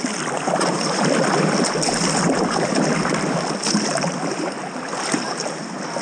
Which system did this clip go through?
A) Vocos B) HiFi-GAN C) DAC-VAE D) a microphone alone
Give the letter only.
D